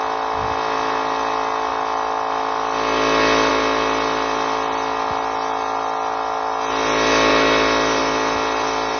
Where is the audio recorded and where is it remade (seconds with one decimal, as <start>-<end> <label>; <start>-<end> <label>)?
0.0-9.0 recorded